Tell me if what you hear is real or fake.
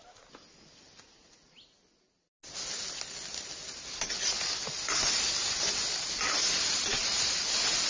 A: real